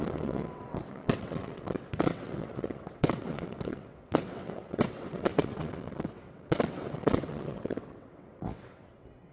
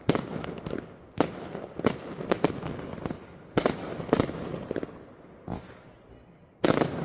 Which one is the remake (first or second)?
first